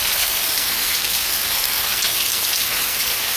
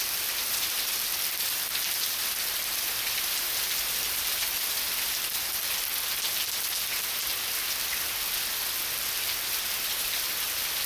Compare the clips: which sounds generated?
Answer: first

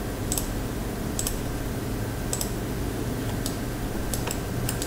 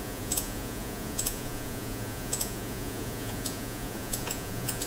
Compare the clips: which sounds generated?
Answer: second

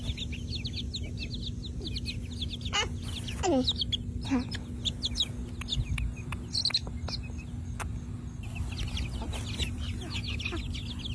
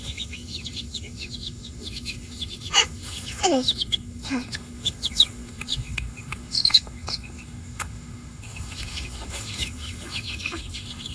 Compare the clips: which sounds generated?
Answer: second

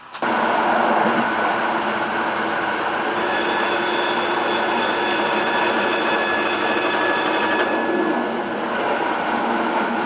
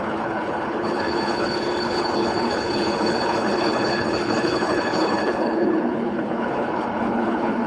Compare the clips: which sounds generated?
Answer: second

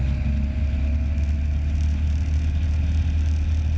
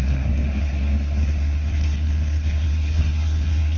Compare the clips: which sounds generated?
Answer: second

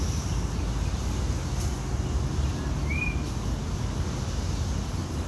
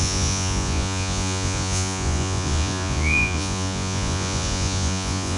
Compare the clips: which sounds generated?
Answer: second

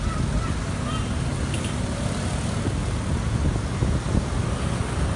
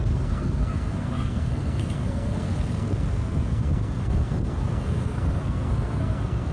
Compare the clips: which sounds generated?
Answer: second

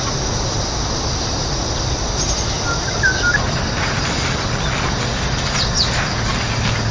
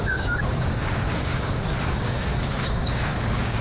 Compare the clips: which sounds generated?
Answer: second